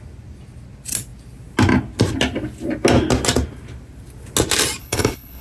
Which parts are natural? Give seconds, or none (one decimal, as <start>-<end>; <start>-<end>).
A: 0.0-4.8